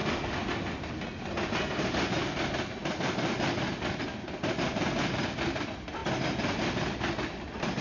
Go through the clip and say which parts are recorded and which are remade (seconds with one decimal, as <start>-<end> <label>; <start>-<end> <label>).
0.0-7.8 recorded